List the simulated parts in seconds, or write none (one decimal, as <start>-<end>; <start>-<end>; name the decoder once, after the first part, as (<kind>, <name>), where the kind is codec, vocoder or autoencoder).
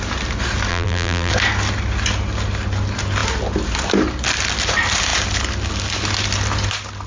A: 0.7-1.3 (vocoder, BigVGAN v2)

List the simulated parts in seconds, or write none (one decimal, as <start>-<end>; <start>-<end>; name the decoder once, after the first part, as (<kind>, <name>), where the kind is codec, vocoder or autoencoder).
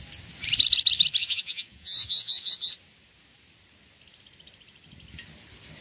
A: 1.2-2.5 (vocoder, Vocos)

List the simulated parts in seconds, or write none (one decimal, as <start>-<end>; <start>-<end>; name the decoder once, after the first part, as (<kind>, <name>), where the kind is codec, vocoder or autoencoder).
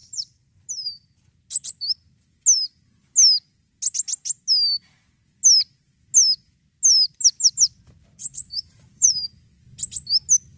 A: 0.0-0.7 (vocoder, BigVGAN v2); 8.2-9.1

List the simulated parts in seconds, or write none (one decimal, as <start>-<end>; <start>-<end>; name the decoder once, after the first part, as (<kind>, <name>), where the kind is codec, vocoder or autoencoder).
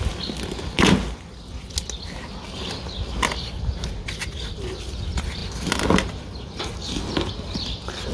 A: none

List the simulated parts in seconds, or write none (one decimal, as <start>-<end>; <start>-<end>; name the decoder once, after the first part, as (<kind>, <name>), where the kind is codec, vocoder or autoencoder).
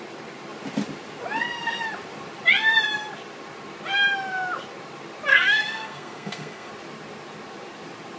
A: 5.3-6.7 (codec, SNAC)